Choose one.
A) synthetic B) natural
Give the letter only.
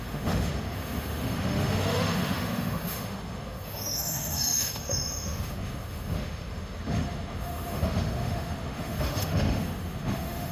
A